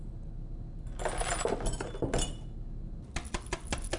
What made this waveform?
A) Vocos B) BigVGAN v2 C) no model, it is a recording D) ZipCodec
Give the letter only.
C